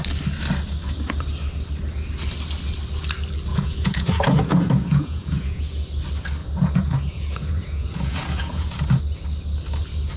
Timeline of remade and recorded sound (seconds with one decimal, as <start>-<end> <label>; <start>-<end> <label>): 0.0-3.5 recorded; 3.5-5.6 remade; 5.6-6.4 recorded; 6.4-9.0 remade; 9.0-10.2 recorded